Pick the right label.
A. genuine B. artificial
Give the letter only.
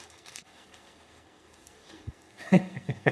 B